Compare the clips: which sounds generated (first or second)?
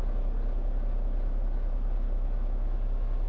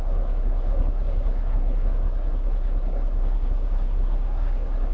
second